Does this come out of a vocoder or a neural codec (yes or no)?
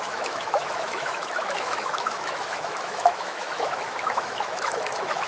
yes